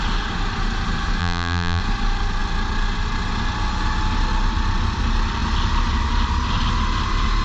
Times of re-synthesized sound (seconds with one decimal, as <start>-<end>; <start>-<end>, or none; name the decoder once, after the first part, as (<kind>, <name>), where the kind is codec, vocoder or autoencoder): 1.2-1.8 (vocoder, BigVGAN v2)